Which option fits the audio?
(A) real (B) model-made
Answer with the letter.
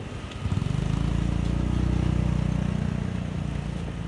A